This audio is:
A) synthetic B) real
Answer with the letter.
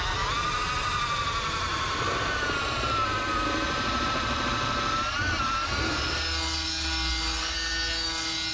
B